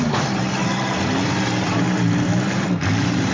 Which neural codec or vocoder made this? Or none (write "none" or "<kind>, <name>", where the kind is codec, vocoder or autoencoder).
vocoder, BigVGAN v2